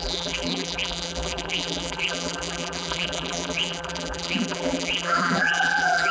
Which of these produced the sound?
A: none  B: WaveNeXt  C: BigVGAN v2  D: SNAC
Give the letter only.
C